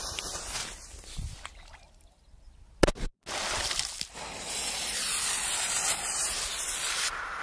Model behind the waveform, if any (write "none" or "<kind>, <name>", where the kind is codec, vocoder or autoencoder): none